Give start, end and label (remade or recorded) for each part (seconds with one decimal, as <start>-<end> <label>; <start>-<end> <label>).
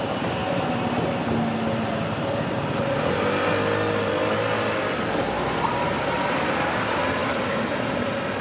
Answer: 0.0-8.4 recorded